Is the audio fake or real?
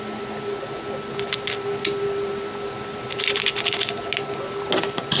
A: real